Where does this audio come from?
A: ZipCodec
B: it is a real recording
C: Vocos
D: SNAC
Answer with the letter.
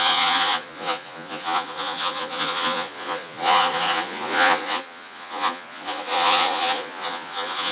C